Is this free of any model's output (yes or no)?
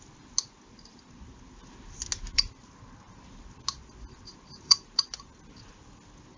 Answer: yes